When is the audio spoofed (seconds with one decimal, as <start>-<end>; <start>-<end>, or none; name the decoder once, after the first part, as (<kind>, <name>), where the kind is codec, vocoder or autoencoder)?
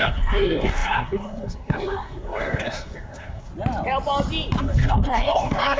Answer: 0.0-3.5 (codec, SNAC); 4.6-5.8